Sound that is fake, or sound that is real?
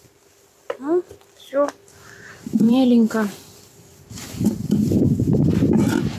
fake